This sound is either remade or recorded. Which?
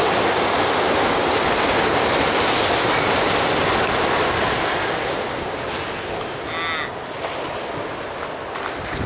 recorded